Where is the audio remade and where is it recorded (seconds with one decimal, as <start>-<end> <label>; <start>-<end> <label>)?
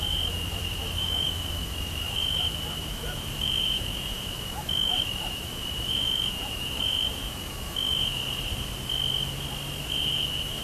0.0-8.2 remade; 8.2-9.9 recorded; 9.9-10.6 remade